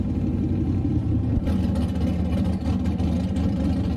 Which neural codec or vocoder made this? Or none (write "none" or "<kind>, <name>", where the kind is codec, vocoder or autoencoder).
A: none